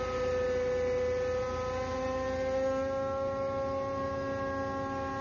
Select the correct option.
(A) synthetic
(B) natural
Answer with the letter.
B